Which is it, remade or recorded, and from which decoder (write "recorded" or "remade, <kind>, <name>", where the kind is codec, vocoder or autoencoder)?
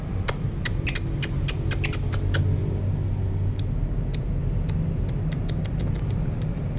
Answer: recorded